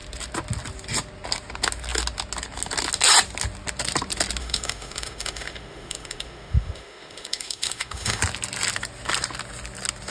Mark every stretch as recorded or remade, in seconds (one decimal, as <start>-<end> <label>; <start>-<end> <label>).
0.0-4.4 recorded; 4.4-8.2 remade; 8.2-10.1 recorded